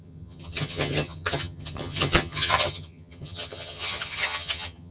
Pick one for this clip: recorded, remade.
remade